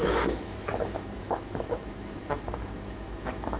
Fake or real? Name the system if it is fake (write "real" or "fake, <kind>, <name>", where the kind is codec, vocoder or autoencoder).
fake, autoencoder, DAC-VAE